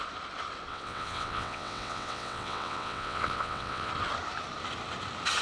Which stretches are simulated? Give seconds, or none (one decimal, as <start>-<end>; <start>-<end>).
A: 0.7-3.9